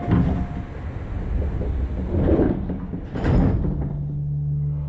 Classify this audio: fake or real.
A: real